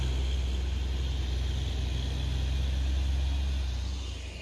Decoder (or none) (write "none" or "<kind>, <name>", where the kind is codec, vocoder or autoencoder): none